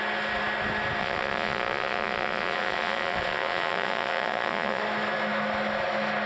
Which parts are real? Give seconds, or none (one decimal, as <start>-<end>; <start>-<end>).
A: 0.0-1.0; 4.8-6.3